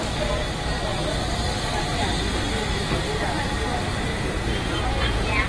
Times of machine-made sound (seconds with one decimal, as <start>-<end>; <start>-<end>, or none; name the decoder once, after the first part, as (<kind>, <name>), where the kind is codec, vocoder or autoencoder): 4.1-5.5 (vocoder, Vocos)